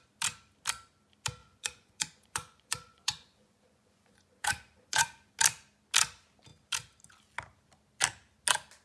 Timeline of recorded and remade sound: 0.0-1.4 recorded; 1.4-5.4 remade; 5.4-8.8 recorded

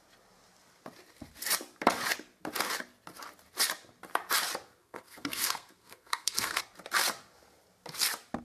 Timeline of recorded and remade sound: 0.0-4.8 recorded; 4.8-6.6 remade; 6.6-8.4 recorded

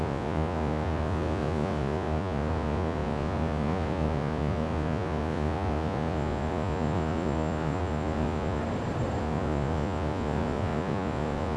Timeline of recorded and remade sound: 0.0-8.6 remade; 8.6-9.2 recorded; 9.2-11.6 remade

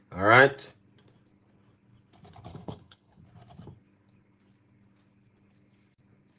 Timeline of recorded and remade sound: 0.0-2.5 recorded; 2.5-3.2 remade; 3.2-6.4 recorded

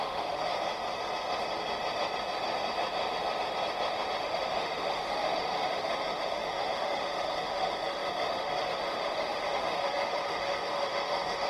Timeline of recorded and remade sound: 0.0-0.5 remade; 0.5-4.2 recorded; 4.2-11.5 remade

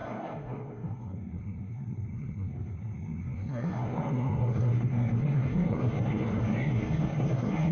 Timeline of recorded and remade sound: 0.0-7.7 remade